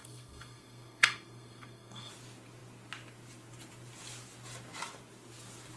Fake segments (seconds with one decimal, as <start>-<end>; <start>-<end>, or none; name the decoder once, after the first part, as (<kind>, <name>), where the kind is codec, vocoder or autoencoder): 0.0-2.1 (codec, SNAC)